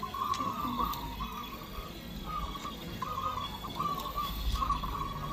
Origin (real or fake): fake